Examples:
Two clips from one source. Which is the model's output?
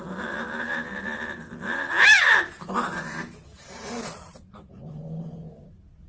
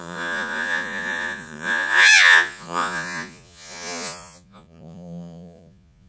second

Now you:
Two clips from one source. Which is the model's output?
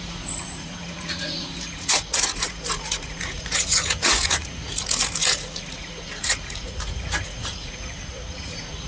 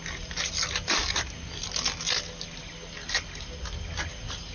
first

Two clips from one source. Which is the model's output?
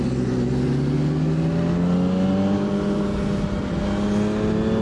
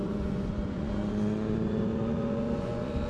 second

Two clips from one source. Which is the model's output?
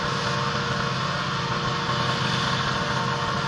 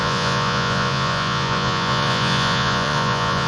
second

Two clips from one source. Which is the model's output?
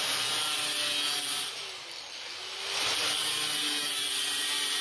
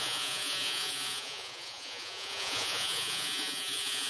second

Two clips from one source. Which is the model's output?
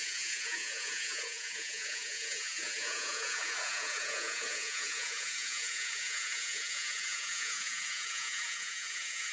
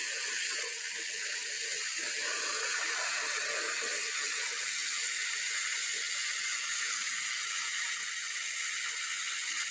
first